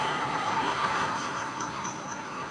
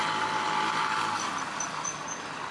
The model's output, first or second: first